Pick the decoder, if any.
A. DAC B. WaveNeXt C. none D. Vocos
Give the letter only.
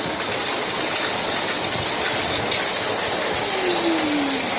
C